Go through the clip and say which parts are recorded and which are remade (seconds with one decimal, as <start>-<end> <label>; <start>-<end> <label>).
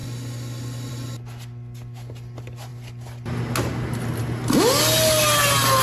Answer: 0.0-5.8 recorded